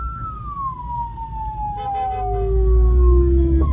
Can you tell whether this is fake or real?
real